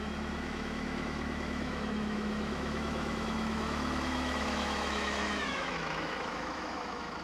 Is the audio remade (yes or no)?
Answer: yes